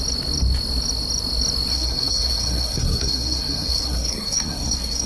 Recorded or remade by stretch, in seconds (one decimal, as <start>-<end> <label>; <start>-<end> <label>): 0.0-1.7 recorded; 1.7-5.1 remade